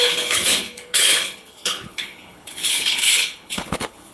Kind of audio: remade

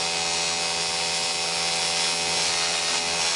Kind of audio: recorded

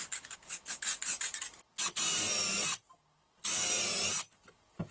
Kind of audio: recorded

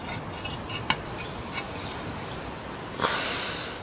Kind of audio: recorded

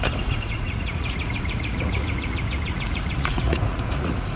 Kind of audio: remade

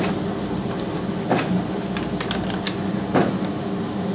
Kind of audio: recorded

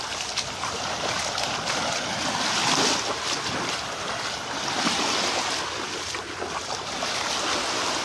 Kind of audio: recorded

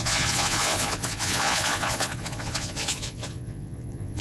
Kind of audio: remade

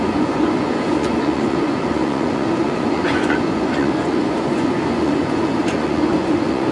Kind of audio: remade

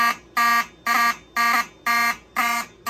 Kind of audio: recorded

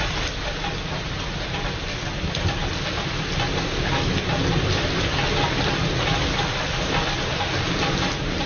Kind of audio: recorded